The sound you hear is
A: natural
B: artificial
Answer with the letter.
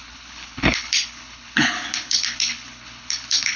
B